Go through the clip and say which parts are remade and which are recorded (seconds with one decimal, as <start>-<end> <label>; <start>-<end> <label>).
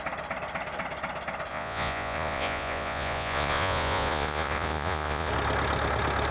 0.0-1.5 recorded; 1.5-5.3 remade; 5.3-6.3 recorded